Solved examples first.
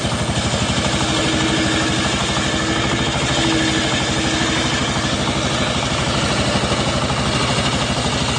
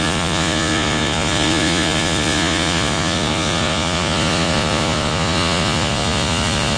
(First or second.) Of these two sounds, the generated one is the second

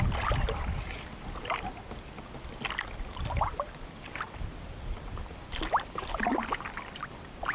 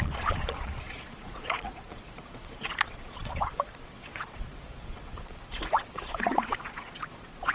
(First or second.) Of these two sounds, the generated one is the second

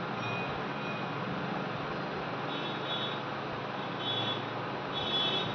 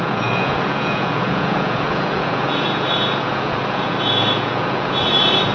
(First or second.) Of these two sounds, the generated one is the second